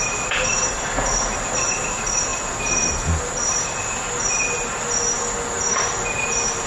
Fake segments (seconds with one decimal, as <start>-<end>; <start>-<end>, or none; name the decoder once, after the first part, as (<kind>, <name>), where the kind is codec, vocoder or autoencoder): none